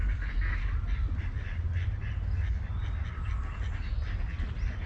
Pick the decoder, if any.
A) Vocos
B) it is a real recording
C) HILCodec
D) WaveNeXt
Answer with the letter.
B